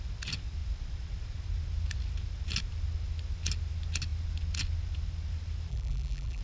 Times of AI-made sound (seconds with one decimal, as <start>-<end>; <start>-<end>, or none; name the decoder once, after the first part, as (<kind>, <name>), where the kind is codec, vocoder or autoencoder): 5.7-6.4 (vocoder, BigVGAN v2)